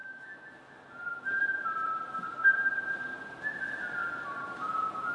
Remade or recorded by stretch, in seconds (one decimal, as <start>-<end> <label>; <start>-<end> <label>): 0.0-0.6 remade; 0.6-5.1 recorded